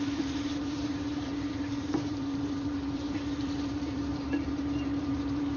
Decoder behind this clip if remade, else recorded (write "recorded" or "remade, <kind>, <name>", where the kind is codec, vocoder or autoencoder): remade, vocoder, BigVGAN v2